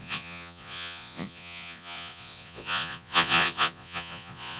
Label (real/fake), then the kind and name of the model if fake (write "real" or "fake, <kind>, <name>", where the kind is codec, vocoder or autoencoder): fake, vocoder, Vocos